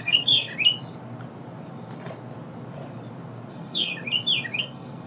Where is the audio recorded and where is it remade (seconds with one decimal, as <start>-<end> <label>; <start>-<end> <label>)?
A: 0.0-0.5 remade; 0.5-3.5 recorded; 3.5-3.9 remade; 3.9-4.6 recorded; 4.6-5.1 remade